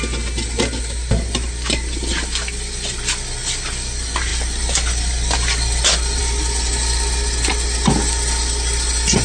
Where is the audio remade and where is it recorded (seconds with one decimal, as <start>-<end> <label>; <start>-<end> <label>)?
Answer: 0.0-9.2 recorded